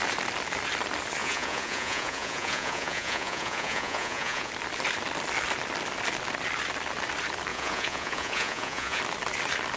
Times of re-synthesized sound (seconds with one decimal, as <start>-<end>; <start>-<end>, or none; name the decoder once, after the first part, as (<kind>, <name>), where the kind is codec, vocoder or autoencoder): 1.2-4.5 (vocoder, Vocos); 7.5-9.0